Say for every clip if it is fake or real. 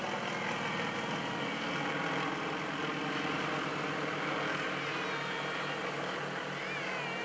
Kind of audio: real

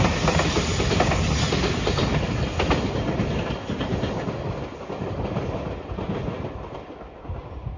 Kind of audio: real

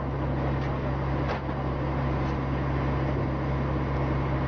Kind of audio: real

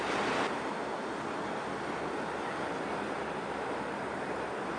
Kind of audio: real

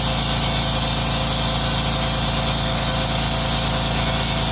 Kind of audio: real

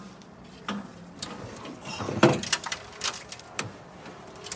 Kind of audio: real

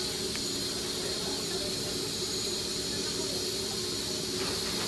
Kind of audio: real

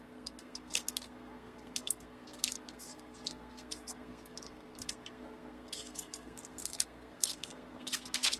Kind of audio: fake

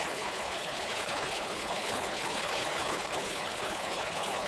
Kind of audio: fake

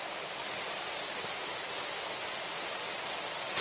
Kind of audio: real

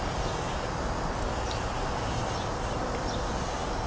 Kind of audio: real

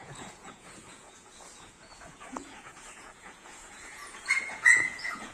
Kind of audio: fake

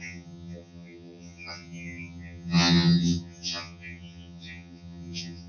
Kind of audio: fake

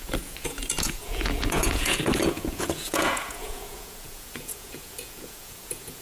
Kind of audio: fake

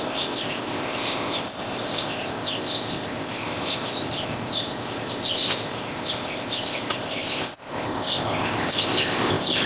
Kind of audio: fake